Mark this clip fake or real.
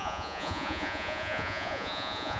fake